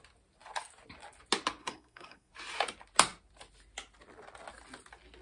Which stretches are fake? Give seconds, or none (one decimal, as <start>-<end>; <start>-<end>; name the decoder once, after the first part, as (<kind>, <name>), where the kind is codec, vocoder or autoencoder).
1.6-2.3 (codec, SNAC)